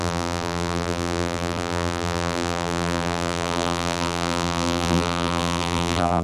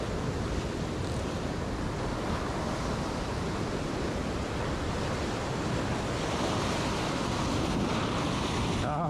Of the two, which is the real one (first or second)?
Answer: second